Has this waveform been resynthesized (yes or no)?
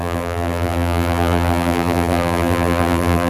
yes